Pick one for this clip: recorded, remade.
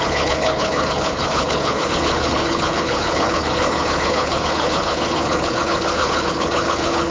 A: remade